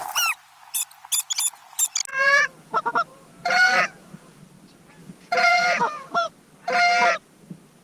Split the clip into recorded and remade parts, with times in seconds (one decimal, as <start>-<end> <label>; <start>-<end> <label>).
0.0-2.1 recorded; 2.1-4.4 remade; 4.4-5.0 recorded; 5.0-6.3 remade; 6.3-7.8 recorded